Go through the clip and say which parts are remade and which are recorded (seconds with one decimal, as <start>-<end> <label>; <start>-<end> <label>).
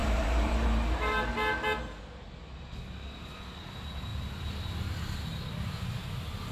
0.0-1.3 remade; 1.3-6.5 recorded